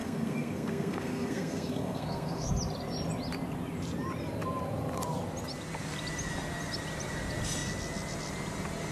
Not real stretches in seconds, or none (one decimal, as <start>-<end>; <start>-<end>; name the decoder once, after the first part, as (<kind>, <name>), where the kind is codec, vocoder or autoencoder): 0.0-2.5 (codec, SNAC)